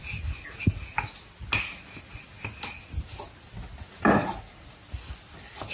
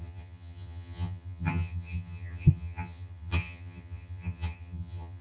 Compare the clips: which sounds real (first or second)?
first